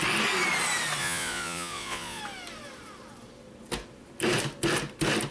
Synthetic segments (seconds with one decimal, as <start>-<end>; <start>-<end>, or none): 1.0-2.2